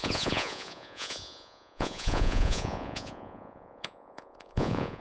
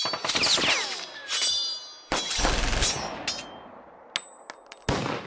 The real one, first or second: second